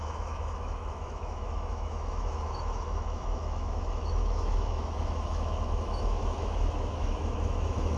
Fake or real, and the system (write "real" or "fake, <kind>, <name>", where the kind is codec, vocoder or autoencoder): fake, autoencoder, DAC-VAE